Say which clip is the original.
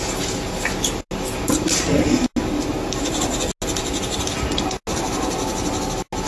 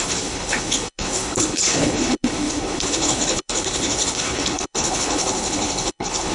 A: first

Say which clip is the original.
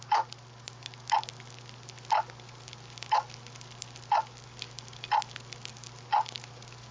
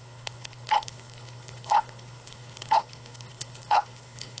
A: first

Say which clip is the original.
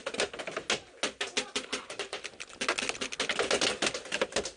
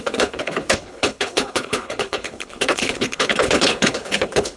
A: first